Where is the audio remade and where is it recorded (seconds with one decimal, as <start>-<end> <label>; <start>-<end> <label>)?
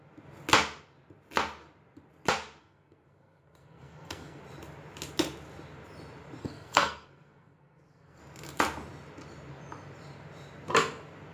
0.0-2.6 recorded; 2.6-4.4 remade; 4.4-6.4 recorded; 6.4-8.2 remade; 8.2-11.3 recorded